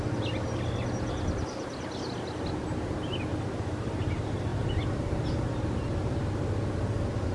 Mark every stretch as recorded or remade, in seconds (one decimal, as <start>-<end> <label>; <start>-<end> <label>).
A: 0.0-7.3 recorded